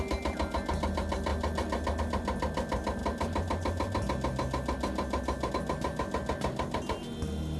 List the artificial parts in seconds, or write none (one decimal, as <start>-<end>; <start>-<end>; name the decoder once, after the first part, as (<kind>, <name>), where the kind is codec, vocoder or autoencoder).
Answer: none